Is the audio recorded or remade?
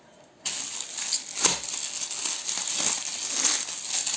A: recorded